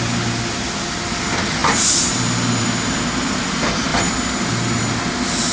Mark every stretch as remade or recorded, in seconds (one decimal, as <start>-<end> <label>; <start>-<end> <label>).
0.0-5.5 recorded